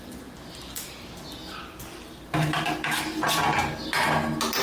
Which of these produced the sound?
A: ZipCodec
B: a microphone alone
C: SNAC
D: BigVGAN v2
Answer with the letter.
B